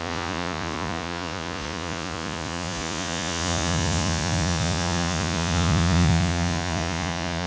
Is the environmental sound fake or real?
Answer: fake